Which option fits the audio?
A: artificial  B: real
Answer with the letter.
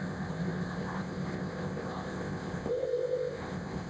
A